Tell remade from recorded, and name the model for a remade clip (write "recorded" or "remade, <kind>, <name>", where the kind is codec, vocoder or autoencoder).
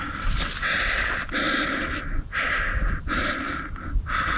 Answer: recorded